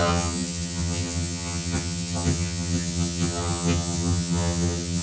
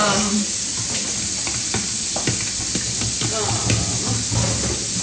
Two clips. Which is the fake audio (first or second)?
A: first